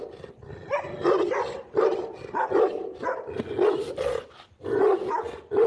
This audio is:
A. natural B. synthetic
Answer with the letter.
A